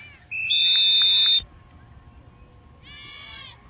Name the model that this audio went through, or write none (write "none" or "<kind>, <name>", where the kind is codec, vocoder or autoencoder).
none